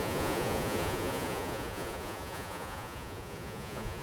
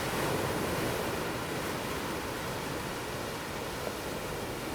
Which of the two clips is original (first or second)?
second